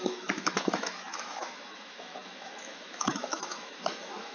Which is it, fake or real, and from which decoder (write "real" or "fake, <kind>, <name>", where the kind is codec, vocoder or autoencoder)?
fake, autoencoder, DAC-VAE